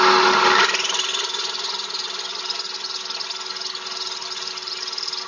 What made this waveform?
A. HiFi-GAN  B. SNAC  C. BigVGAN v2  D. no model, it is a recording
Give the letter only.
D